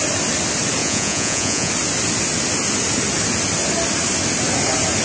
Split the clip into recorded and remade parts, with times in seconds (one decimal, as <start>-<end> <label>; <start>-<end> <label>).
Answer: 0.0-0.8 recorded; 0.8-1.7 remade; 1.7-5.0 recorded